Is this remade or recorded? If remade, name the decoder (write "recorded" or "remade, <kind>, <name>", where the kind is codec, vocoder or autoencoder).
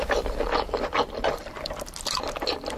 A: remade, vocoder, BigVGAN v2